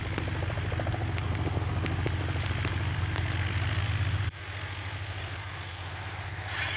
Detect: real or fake real